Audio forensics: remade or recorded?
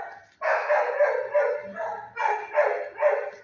recorded